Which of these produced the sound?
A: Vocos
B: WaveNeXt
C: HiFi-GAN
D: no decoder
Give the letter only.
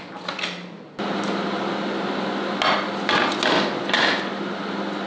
D